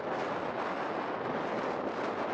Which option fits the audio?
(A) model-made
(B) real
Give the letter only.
B